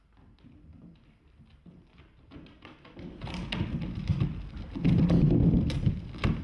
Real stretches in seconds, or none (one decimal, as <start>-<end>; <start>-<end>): 0.0-6.4